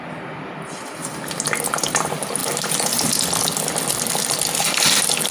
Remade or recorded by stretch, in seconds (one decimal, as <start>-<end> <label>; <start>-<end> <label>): 0.0-2.4 recorded; 2.4-3.2 remade; 3.2-5.3 recorded